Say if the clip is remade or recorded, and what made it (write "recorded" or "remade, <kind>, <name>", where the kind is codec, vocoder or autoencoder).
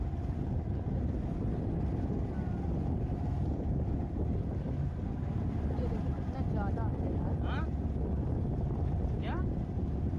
recorded